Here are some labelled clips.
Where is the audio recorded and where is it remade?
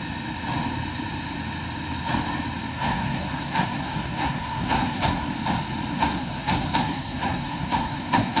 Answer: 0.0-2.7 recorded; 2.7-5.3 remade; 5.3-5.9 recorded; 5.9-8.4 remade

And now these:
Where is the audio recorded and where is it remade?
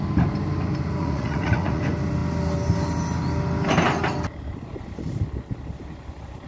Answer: 0.0-1.0 recorded; 1.0-1.8 remade; 1.8-6.5 recorded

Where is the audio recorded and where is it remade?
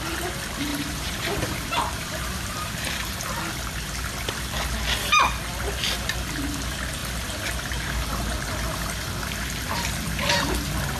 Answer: 0.0-0.7 recorded; 0.7-3.2 remade; 3.2-11.0 recorded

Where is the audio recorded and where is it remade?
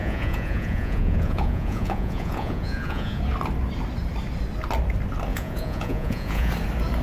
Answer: 0.0-3.2 remade; 3.2-5.3 recorded; 5.3-6.5 remade; 6.5-7.0 recorded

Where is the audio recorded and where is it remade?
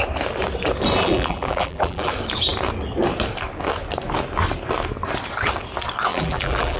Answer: 0.0-1.0 recorded; 1.0-2.1 remade; 2.1-6.1 recorded; 6.1-6.8 remade